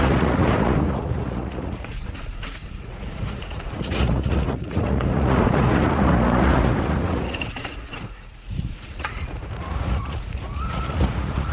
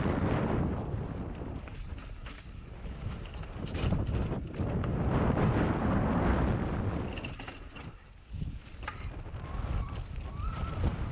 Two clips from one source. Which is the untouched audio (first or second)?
second